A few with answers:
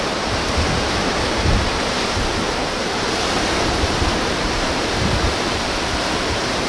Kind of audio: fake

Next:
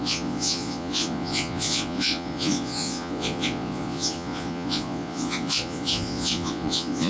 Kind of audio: fake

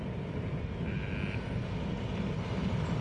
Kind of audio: real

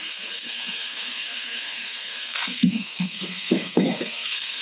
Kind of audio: fake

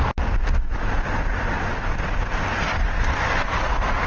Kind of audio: real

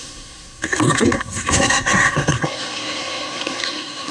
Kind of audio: fake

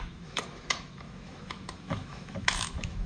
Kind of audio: fake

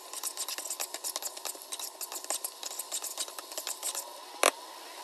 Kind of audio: real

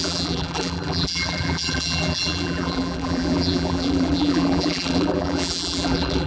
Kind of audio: fake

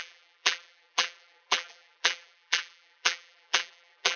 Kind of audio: fake